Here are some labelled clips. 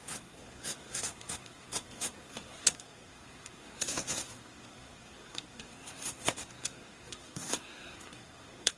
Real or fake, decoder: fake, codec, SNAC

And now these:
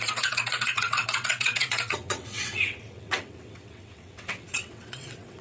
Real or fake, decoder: fake, vocoder, WaveNeXt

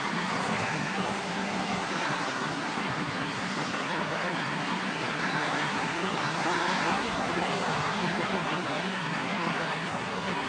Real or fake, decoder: fake, codec, SNAC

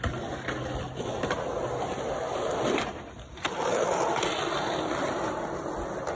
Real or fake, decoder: real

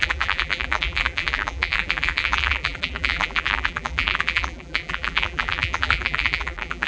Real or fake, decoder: fake, vocoder, BigVGAN v2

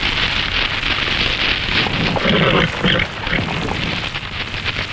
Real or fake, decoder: real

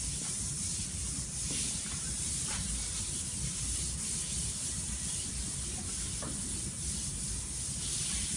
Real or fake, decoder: real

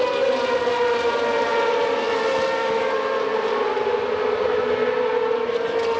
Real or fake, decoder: real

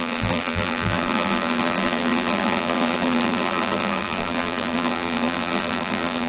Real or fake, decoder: fake, vocoder, BigVGAN v2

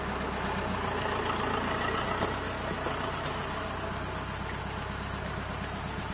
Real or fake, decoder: real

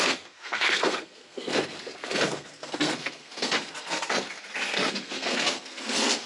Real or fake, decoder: fake, codec, SNAC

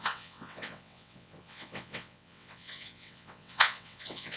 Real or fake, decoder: fake, vocoder, WaveNeXt